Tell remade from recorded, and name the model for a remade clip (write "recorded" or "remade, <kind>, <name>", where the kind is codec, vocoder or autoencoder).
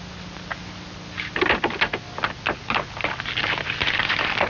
recorded